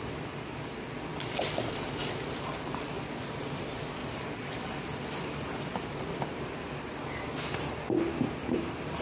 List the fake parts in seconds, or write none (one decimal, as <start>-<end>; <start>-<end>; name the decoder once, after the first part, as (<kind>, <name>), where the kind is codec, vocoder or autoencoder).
none